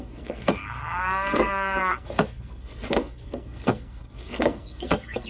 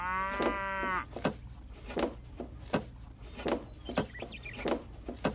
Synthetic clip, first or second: first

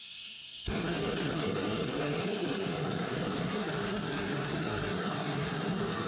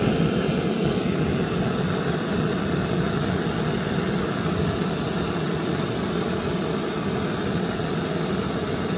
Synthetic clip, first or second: first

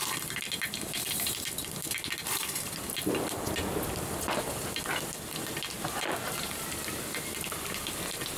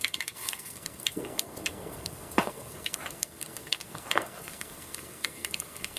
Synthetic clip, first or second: second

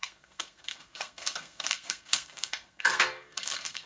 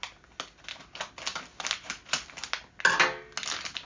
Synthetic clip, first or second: first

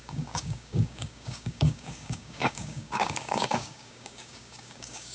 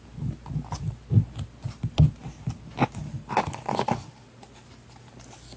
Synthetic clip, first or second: first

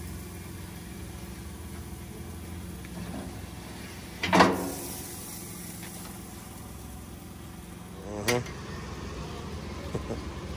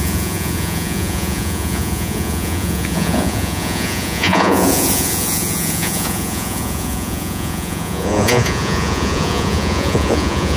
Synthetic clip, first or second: second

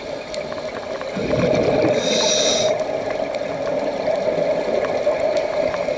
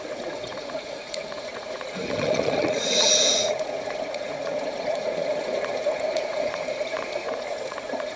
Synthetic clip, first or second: second